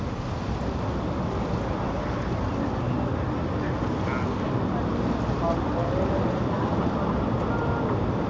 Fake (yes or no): no